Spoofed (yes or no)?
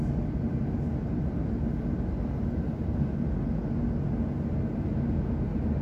no